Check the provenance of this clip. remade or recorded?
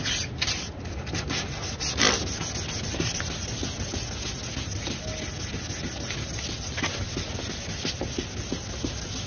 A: recorded